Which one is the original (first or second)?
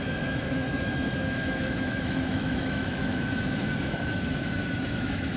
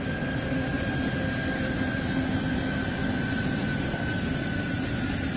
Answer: second